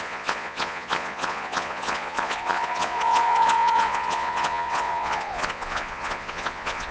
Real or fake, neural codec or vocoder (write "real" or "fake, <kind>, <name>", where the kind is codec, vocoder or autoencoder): fake, vocoder, Vocos